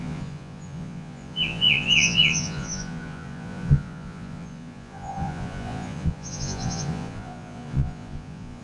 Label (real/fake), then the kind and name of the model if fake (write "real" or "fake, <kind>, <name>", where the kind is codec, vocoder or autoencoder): fake, vocoder, Vocos